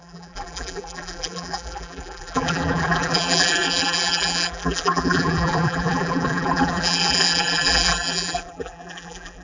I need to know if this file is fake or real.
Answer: fake